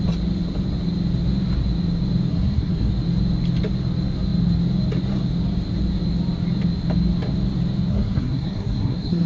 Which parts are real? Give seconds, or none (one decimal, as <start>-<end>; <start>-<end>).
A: 0.0-2.3; 2.9-7.9